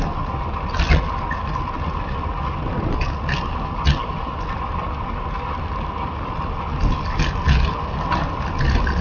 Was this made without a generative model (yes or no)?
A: yes